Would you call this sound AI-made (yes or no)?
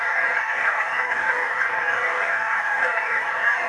yes